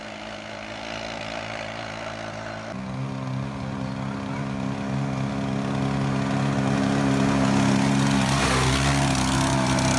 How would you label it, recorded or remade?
recorded